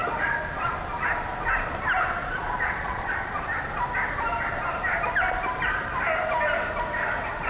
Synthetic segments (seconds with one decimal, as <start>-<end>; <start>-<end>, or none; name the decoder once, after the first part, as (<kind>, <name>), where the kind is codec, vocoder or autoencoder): 2.2-3.4 (vocoder, Vocos)